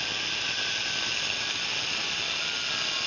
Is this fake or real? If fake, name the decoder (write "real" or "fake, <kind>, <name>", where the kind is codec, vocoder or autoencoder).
real